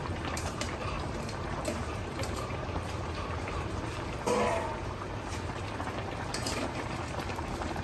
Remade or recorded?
remade